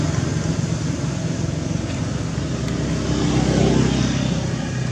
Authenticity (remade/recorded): recorded